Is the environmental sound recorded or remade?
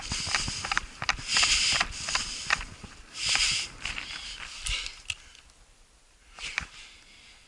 recorded